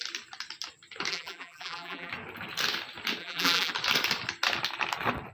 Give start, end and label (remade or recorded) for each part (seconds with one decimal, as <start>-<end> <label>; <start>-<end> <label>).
0.0-1.1 recorded; 1.1-2.1 remade; 2.1-3.2 recorded; 3.2-3.7 remade; 3.7-5.3 recorded